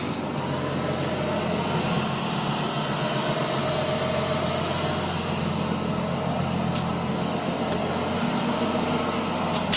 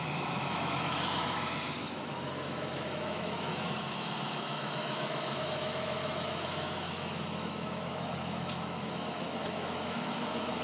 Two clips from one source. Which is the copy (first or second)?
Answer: second